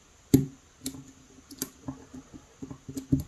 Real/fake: real